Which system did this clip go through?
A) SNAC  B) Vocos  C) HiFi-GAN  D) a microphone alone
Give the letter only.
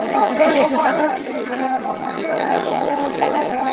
C